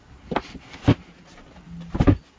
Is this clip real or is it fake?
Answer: real